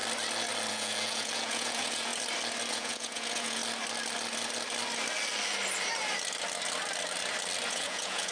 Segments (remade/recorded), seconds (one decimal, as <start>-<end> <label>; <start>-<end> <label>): 0.0-0.7 recorded; 0.7-2.1 remade; 2.1-2.7 recorded; 2.7-3.6 remade; 3.6-7.7 recorded; 7.7-8.3 remade